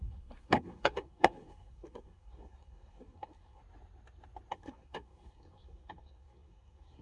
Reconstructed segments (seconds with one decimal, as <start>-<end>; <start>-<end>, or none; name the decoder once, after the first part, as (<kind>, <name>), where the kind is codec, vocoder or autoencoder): 0.0-3.6 (codec, SNAC); 4.5-7.0